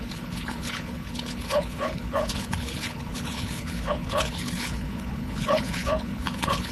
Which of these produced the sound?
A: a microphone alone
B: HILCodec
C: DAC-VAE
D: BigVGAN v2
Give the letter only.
B